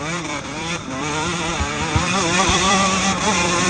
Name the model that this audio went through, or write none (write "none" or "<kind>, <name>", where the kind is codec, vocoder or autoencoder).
vocoder, BigVGAN v2